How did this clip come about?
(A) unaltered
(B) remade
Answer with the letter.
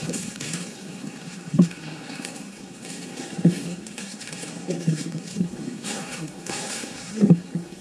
B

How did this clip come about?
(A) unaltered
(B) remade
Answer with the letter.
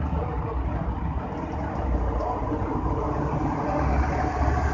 A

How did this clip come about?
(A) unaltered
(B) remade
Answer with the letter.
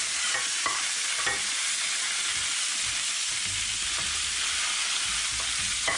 A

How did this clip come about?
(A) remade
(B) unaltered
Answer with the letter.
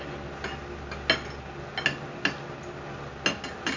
B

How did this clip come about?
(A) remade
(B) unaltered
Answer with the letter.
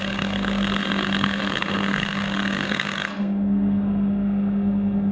A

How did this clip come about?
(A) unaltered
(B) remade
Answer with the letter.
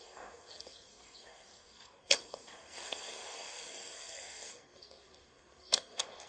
B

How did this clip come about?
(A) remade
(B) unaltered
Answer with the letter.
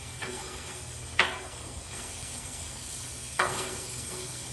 A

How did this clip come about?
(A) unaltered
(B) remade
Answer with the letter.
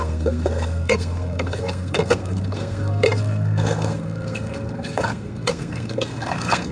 B